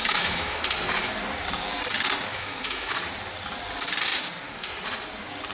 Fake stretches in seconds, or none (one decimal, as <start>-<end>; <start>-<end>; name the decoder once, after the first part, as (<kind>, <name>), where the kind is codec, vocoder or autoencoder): 0.0-0.6 (autoencoder, DAC-VAE); 2.3-3.0